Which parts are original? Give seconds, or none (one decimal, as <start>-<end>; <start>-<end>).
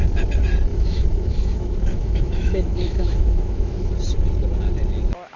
0.0-0.7; 3.9-5.4